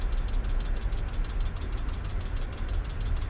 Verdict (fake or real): real